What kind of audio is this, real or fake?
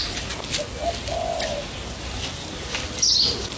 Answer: real